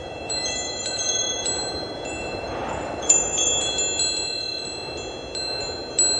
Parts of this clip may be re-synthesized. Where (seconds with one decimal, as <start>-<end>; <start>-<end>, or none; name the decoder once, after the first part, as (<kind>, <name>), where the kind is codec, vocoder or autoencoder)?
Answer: 0.0-3.7 (vocoder, BigVGAN v2)